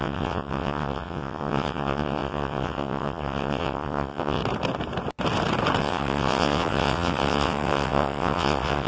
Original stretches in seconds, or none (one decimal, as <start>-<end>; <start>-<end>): 4.4-5.8